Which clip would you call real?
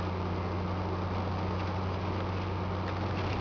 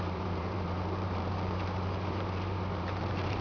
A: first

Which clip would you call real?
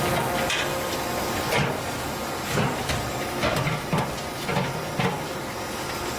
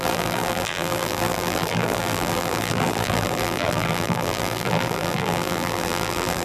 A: first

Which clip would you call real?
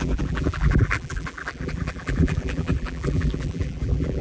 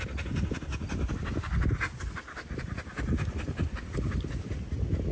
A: second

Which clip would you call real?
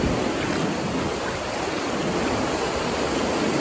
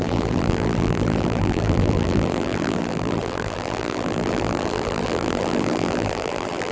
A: first